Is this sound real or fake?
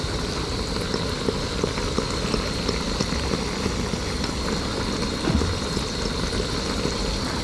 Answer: real